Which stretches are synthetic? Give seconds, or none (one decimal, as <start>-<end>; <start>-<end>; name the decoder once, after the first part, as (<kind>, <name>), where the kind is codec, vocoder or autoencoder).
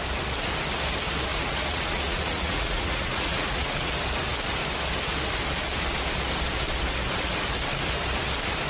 1.3-3.9 (vocoder, Vocos)